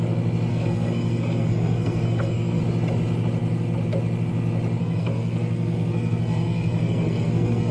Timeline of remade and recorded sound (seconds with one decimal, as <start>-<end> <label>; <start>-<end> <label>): 0.0-0.5 recorded; 0.5-2.6 remade; 2.6-4.8 recorded; 4.8-7.7 remade